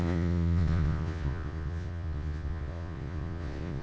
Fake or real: fake